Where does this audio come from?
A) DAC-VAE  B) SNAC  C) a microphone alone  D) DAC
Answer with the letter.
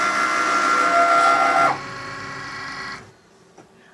C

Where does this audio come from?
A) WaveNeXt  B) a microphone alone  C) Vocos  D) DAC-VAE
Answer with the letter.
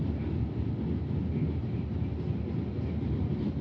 B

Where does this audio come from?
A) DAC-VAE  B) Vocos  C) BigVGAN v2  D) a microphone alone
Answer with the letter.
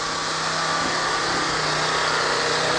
D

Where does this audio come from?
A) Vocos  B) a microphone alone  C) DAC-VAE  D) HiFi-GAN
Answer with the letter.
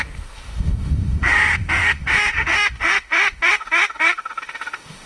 C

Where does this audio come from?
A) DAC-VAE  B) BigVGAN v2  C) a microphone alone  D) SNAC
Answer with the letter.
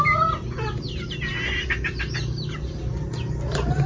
C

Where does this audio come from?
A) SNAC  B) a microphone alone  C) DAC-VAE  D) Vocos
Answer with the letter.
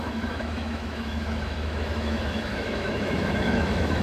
C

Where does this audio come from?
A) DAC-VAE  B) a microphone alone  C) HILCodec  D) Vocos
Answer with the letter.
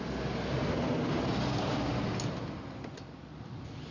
B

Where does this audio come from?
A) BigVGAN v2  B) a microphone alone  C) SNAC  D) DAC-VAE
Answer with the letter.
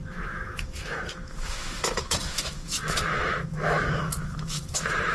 D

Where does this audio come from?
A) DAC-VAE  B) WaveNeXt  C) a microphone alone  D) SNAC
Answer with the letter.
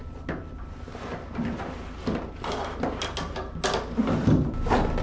C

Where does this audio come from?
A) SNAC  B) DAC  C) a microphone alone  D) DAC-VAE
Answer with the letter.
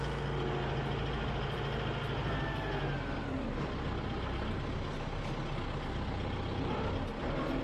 C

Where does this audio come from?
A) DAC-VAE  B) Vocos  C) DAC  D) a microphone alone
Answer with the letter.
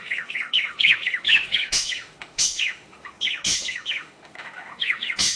A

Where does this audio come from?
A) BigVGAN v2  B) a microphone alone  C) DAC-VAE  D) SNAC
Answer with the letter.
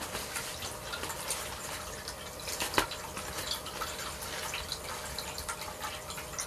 B